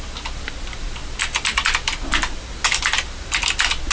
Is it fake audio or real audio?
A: real